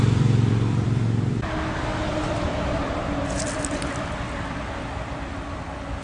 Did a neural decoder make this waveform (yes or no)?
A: yes